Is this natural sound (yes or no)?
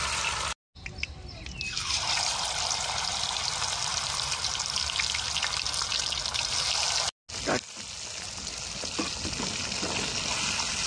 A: yes